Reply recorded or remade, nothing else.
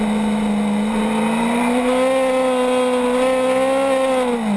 recorded